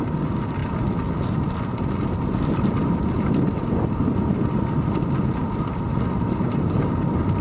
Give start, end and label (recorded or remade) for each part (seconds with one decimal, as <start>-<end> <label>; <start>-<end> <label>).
0.0-7.4 recorded